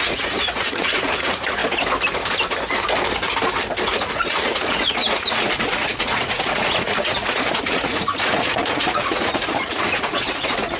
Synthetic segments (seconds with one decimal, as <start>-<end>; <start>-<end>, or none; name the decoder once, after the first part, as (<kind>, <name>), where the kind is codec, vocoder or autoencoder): 0.0-1.6 (vocoder, Vocos); 3.8-10.8